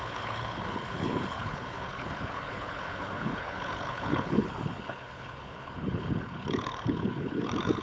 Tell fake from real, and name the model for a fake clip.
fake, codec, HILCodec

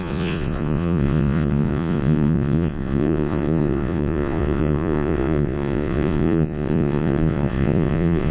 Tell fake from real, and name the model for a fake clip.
fake, vocoder, Vocos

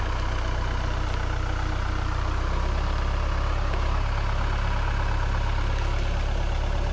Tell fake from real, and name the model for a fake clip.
real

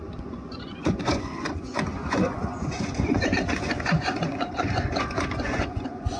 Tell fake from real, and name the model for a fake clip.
fake, vocoder, Vocos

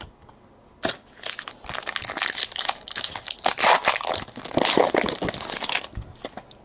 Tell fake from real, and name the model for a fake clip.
real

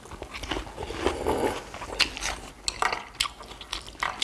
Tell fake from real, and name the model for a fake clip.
real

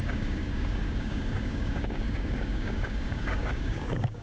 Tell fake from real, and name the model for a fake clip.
fake, codec, DAC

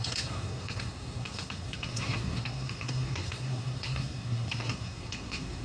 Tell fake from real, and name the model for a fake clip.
fake, codec, SNAC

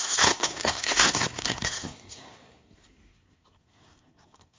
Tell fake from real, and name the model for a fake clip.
fake, codec, SNAC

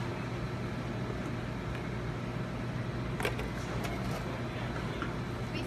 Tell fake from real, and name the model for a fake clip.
real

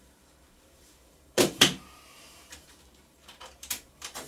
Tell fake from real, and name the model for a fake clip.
fake, vocoder, BigVGAN v2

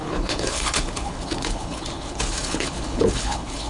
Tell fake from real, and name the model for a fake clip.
fake, codec, HILCodec